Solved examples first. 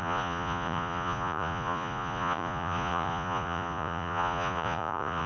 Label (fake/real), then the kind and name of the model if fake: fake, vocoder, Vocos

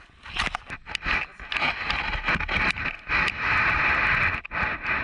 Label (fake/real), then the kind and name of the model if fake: real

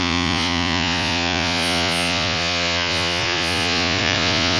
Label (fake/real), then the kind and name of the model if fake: fake, vocoder, Vocos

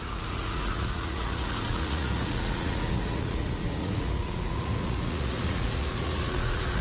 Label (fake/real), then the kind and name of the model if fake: fake, vocoder, Vocos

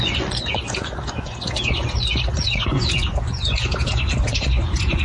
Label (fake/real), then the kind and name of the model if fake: fake, vocoder, Vocos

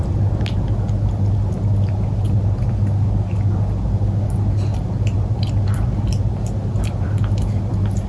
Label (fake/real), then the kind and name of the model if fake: real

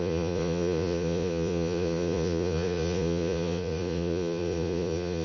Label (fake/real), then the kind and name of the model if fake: fake, vocoder, Vocos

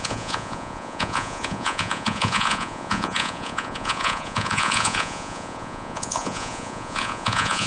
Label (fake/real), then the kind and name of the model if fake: fake, vocoder, Vocos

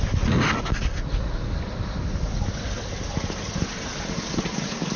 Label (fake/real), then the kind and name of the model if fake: real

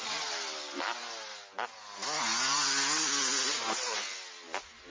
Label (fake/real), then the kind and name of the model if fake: real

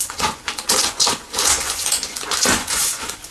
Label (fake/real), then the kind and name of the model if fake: fake, vocoder, Vocos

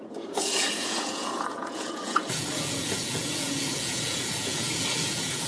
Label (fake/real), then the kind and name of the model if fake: fake, vocoder, Vocos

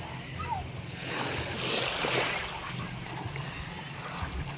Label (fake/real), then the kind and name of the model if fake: real